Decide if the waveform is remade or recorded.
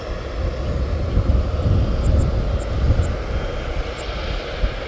recorded